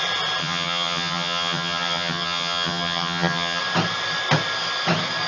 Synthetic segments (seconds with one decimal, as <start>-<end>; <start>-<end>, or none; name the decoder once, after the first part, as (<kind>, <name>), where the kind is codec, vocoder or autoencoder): 0.4-3.6 (vocoder, HiFi-GAN)